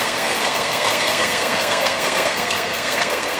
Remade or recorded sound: remade